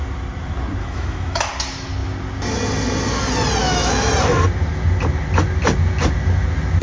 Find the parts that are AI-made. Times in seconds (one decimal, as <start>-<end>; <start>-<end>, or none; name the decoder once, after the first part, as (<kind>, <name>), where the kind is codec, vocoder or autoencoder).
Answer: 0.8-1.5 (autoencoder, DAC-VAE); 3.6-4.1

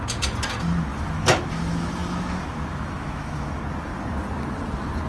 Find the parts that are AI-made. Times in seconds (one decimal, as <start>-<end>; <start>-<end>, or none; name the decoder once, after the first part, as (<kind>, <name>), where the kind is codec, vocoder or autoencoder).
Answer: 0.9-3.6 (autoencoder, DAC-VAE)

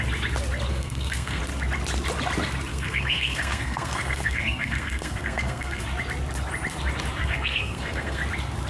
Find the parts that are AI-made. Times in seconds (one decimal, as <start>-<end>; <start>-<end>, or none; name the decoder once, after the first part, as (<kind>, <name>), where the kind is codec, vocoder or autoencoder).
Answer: 0.7-1.4 (codec, SNAC); 2.7-5.8; 7.2-8.2

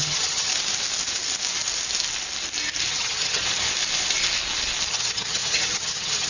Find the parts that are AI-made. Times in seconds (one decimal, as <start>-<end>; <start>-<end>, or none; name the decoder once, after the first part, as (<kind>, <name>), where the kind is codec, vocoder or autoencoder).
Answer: 0.0-0.5 (vocoder, HiFi-GAN); 2.9-3.4; 4.9-6.3